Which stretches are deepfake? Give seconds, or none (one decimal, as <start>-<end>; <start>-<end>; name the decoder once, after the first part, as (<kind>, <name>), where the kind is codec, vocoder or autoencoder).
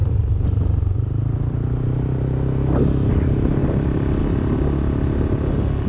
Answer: none